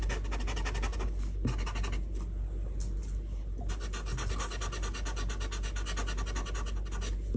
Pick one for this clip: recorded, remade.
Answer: recorded